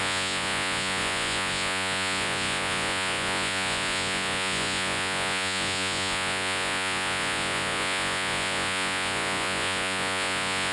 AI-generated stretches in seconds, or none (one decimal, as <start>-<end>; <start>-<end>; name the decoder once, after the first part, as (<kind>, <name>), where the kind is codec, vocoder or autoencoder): 0.0-10.7 (vocoder, Vocos)